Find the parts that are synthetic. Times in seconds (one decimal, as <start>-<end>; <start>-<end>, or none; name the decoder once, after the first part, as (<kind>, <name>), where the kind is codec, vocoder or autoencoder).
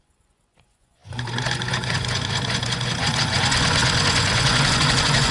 0.0-5.3 (vocoder, Vocos)